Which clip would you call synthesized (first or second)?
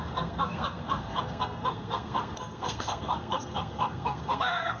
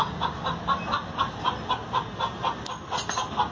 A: first